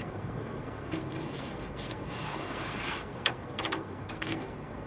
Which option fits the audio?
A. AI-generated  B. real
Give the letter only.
A